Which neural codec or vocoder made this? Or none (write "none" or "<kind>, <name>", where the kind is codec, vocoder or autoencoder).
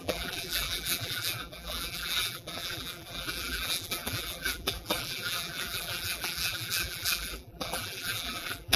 vocoder, BigVGAN v2